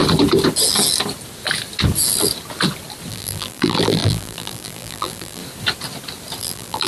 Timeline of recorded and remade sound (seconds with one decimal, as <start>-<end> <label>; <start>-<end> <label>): 0.0-3.1 recorded; 3.1-5.4 remade; 5.4-6.4 recorded; 6.4-6.9 remade

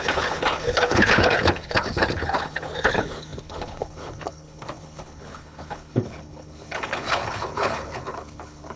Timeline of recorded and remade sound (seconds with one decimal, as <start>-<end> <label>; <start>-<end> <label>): 0.0-8.8 remade

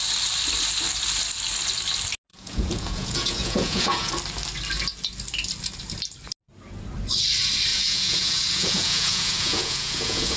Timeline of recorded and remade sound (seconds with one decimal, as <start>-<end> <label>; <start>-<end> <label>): 0.0-2.3 recorded; 2.3-4.1 remade; 4.1-7.7 recorded; 7.7-10.4 remade

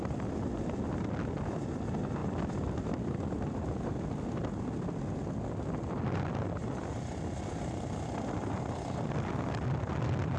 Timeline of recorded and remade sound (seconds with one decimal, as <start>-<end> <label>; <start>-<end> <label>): 0.0-10.4 recorded